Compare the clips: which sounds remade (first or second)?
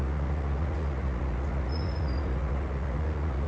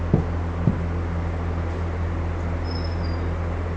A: first